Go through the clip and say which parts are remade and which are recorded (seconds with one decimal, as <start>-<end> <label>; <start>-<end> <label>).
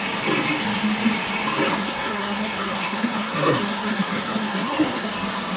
0.0-1.7 recorded; 1.7-5.1 remade; 5.1-5.6 recorded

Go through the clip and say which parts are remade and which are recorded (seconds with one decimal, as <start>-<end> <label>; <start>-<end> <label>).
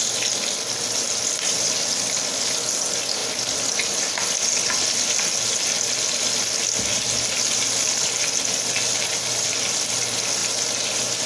0.0-11.3 recorded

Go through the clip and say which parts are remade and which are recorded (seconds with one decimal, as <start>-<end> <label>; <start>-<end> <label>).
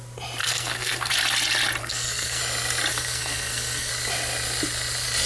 0.0-0.4 recorded; 0.4-1.1 remade; 1.1-1.8 recorded; 1.8-2.4 remade; 2.4-2.9 recorded; 2.9-3.9 remade; 3.9-5.3 recorded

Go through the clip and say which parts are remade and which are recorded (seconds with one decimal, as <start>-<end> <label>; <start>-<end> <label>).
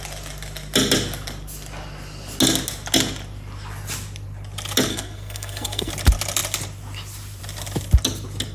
0.0-4.9 recorded; 4.9-5.9 remade; 5.9-8.5 recorded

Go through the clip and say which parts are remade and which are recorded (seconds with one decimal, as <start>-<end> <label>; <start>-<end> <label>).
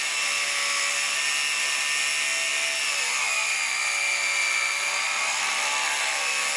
0.0-6.6 recorded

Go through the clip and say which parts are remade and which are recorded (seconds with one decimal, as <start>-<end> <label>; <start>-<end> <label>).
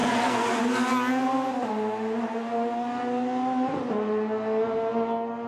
0.0-0.6 remade; 0.6-5.5 recorded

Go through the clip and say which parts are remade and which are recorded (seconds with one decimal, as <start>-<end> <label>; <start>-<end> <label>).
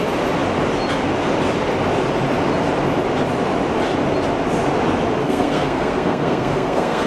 0.0-5.2 recorded; 5.2-7.1 remade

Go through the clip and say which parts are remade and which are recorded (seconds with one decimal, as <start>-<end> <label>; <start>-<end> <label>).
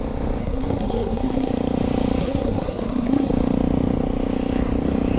0.0-0.4 recorded; 0.4-1.5 remade; 1.5-2.2 recorded; 2.2-3.3 remade; 3.3-5.2 recorded